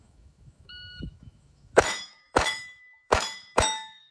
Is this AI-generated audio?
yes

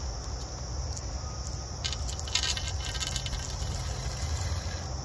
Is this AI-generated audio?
no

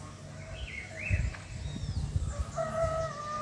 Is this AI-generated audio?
no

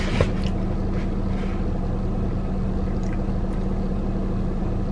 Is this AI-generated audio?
no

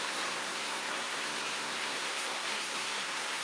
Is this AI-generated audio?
yes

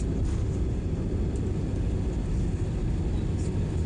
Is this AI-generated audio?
no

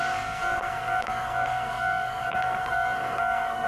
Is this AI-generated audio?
yes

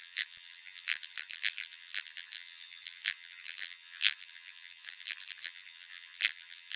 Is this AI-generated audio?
yes